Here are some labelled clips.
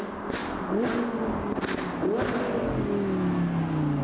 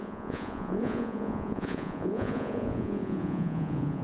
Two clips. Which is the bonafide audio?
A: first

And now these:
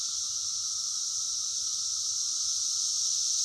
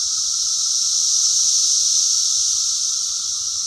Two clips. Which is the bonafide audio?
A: first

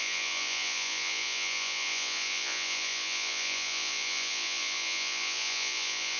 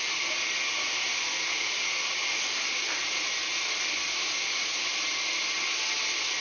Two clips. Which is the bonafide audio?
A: second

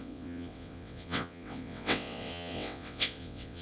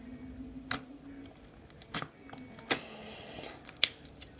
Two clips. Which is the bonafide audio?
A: second